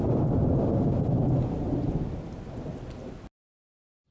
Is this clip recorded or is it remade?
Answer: recorded